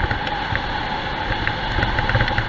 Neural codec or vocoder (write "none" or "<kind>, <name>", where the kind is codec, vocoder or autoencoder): none